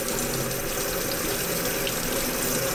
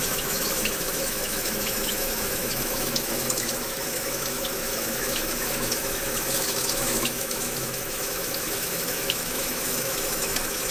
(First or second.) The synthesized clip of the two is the second